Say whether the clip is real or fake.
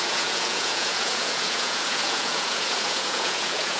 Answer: fake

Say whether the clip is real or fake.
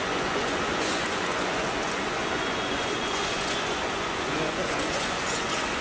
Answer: fake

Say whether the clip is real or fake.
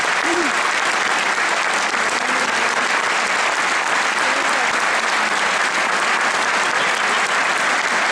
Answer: real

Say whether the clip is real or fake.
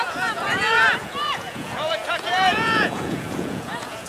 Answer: fake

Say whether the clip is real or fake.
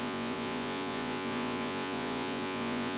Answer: fake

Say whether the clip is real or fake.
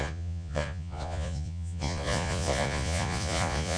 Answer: fake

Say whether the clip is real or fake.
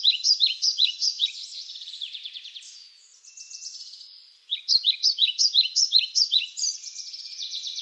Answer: fake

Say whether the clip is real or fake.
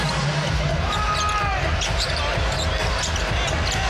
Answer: real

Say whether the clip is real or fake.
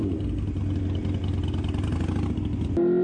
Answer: real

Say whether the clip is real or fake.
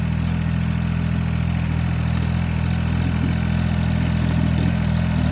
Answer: real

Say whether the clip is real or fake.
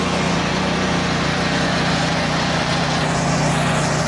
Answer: fake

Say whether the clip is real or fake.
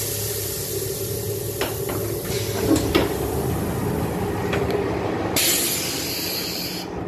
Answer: real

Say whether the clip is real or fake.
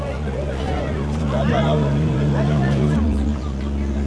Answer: fake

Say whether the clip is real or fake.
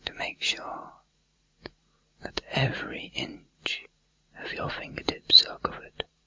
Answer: fake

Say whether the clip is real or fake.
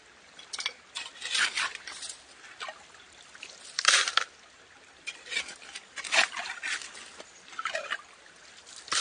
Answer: real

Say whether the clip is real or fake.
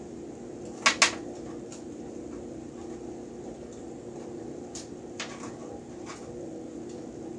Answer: real